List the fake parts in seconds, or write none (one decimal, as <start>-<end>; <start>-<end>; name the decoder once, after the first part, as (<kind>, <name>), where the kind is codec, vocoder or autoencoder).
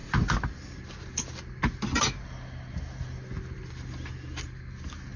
none